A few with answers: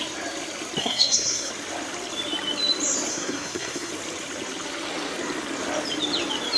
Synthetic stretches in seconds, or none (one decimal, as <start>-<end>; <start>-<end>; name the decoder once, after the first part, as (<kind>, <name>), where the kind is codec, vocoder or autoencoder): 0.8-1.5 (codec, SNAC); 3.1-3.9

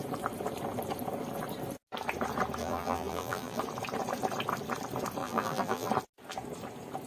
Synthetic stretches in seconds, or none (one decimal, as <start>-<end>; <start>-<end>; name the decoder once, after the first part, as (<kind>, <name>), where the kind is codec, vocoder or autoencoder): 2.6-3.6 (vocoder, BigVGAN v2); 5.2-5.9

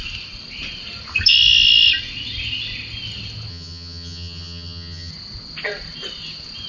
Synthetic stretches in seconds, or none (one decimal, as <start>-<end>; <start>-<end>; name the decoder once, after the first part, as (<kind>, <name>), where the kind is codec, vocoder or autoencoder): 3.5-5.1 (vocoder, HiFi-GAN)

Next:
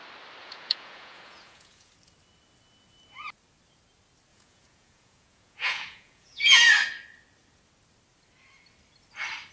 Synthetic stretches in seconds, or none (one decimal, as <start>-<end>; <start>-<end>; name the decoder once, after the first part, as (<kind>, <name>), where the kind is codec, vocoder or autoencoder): 0.4-1.9 (vocoder, Vocos); 4.3-6.7

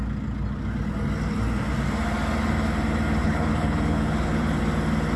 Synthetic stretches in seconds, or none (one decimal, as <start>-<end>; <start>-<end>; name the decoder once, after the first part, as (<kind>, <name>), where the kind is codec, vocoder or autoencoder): 3.2-4.6 (codec, HILCodec)